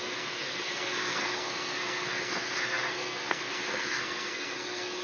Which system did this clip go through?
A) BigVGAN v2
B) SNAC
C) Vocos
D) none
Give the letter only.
B